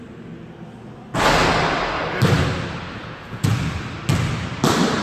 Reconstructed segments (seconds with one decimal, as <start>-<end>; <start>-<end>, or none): 3.0-3.6